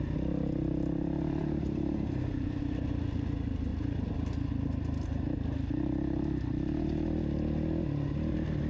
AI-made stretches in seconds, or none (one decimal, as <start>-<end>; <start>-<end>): 1.4-2.6